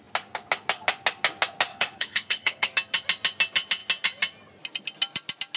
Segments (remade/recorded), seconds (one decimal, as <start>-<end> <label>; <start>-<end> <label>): 0.0-1.7 recorded; 1.7-2.7 remade; 2.7-5.6 recorded